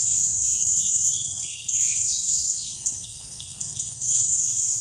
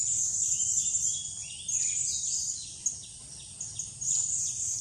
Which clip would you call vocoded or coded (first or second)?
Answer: first